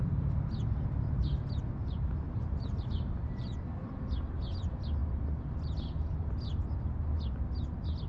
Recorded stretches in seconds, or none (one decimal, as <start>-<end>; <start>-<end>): 0.0-1.8; 3.9-8.1